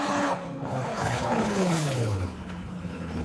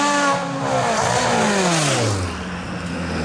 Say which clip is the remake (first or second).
first